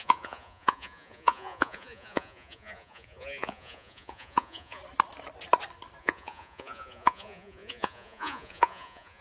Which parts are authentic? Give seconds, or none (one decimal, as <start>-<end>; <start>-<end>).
4.8-6.0